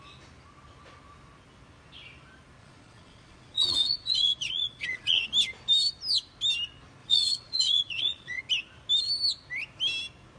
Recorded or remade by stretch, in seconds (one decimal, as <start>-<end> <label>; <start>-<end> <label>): 0.0-2.6 recorded; 2.6-5.3 remade; 5.3-7.0 recorded; 7.0-8.4 remade; 8.4-10.4 recorded